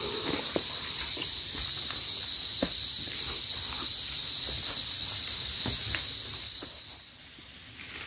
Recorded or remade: recorded